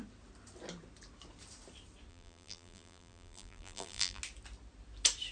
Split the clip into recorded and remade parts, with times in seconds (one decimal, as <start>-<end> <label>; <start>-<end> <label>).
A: 0.0-2.1 recorded; 2.1-4.2 remade; 4.2-5.3 recorded